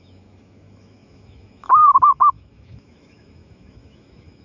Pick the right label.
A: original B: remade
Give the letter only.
B